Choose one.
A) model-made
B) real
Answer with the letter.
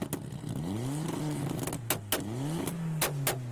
B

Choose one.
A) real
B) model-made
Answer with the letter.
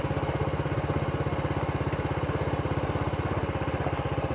A